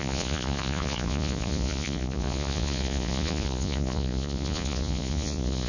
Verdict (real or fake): fake